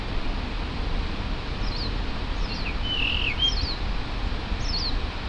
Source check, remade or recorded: recorded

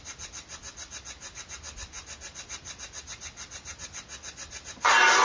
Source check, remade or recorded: recorded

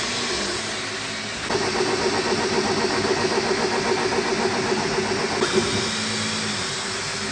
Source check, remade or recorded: recorded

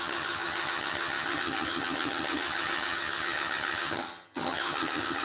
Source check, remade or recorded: remade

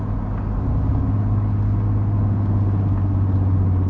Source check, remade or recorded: recorded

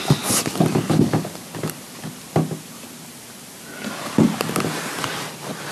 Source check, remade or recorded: recorded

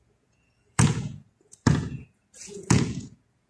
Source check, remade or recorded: remade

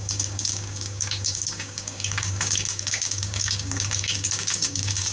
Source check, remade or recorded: remade